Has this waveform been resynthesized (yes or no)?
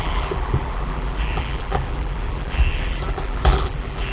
yes